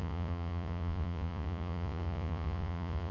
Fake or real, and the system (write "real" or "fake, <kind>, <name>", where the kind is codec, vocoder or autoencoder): fake, vocoder, Vocos